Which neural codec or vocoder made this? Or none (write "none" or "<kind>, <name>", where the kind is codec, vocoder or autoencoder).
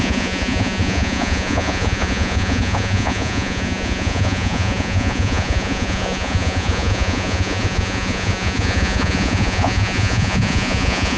vocoder, Vocos